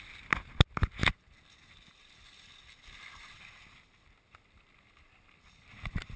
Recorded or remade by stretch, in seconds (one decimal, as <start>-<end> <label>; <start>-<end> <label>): 0.0-6.2 recorded

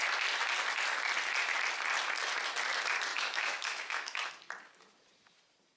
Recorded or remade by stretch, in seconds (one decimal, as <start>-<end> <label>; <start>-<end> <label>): 0.0-3.1 recorded; 3.1-4.3 remade; 4.3-5.8 recorded

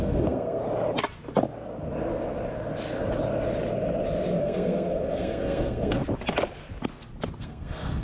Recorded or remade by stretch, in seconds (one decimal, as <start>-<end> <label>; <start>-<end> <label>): 0.0-0.6 remade; 0.6-4.4 recorded; 4.4-6.0 remade; 6.0-7.4 recorded; 7.4-8.0 remade